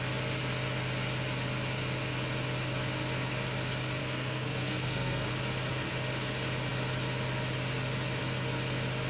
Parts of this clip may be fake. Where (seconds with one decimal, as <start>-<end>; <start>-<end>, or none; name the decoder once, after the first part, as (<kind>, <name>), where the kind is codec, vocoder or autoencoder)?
4.0-5.3 (codec, SNAC)

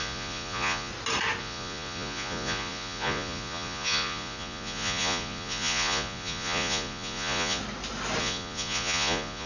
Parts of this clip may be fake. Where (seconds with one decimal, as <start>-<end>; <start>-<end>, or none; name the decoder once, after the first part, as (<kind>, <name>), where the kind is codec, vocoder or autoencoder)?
0.0-0.9 (vocoder, Vocos); 1.4-7.6; 8.2-9.5

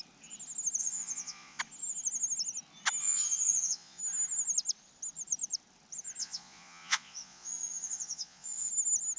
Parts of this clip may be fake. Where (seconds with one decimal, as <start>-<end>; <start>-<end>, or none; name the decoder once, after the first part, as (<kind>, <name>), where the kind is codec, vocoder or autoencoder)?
0.8-1.6 (vocoder, Vocos); 3.0-4.0; 6.2-8.7

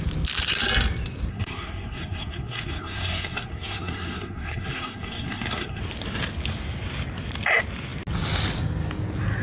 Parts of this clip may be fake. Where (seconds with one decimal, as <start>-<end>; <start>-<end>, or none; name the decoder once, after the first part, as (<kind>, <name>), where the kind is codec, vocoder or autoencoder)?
1.3-5.8 (codec, SNAC)